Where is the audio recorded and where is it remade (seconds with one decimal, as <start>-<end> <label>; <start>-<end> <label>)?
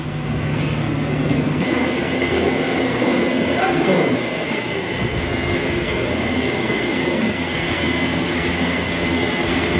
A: 0.0-9.8 remade